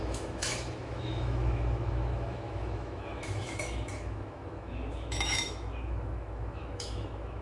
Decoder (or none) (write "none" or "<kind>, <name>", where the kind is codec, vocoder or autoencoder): autoencoder, DAC-VAE